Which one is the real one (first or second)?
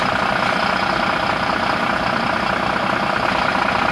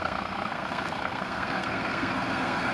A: first